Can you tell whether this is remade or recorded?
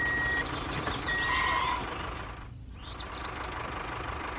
recorded